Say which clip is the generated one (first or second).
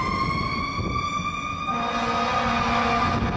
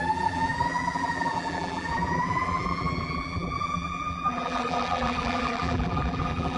second